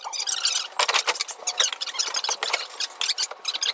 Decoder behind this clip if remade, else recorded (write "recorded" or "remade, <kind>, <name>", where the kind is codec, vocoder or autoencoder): recorded